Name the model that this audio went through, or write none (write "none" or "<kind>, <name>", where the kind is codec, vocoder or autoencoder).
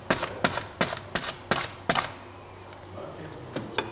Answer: none